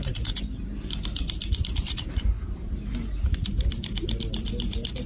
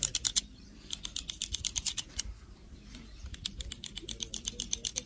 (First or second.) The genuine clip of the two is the first